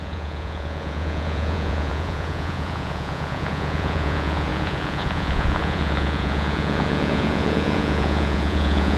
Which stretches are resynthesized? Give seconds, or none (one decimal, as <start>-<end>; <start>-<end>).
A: 0.0-9.0